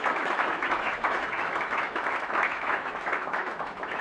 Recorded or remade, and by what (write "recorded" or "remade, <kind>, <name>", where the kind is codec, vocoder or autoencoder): remade, autoencoder, DAC-VAE